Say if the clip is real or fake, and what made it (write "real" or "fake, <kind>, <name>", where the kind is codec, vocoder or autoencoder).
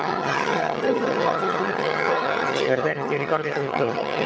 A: fake, vocoder, HiFi-GAN